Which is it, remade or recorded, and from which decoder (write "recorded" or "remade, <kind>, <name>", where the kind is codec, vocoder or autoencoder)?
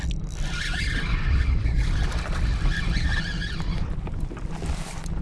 recorded